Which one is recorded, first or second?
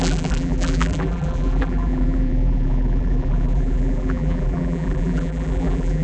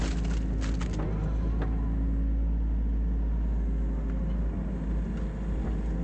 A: second